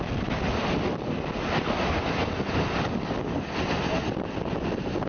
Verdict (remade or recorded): recorded